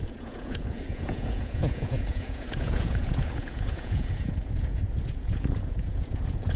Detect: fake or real fake